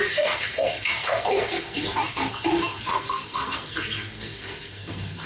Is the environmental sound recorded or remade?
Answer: remade